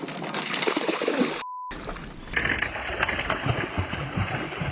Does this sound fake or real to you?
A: real